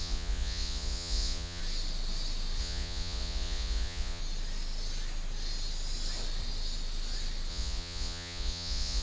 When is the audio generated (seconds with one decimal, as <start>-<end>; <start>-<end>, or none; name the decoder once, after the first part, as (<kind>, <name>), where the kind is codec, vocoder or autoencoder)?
0.0-1.6 (vocoder, Vocos); 2.6-4.2; 7.5-9.0